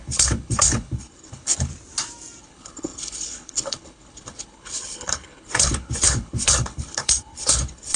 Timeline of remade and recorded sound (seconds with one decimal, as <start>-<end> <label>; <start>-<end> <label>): 0.0-1.7 remade; 1.7-2.4 recorded; 2.4-8.0 remade